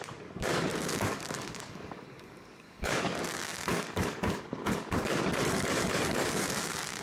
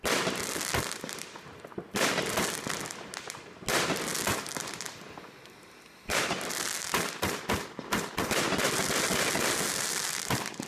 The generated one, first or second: first